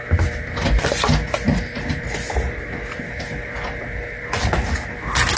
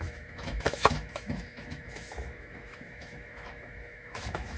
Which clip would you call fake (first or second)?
second